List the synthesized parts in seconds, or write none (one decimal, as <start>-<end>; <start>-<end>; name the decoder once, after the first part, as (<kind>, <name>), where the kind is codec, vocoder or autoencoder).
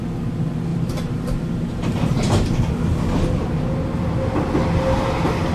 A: 0.7-2.6 (vocoder, BigVGAN v2)